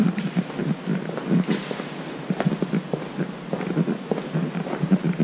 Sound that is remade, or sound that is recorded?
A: recorded